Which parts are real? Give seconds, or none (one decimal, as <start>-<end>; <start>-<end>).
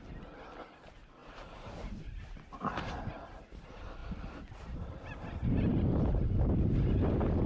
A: 0.0-1.2; 2.0-7.5